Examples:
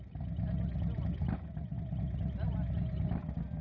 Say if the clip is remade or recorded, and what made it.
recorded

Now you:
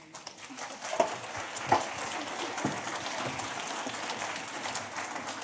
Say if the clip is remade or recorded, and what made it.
recorded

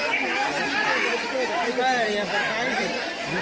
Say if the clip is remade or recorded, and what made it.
recorded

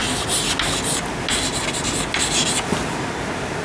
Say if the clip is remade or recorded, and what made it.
recorded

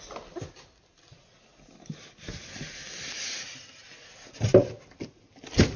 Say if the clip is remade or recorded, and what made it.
recorded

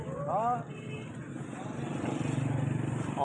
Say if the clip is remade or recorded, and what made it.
recorded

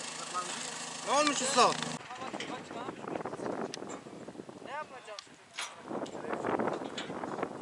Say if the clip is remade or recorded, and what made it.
recorded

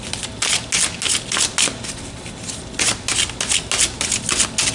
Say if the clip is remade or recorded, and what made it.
recorded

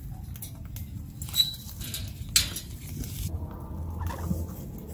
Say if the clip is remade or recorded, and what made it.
recorded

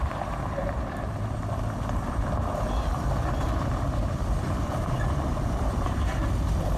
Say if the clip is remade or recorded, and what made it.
remade, vocoder, BigVGAN v2